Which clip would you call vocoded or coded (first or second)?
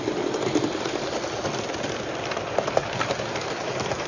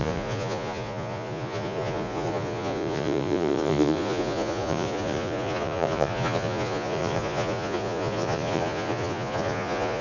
second